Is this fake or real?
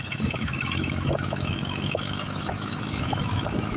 fake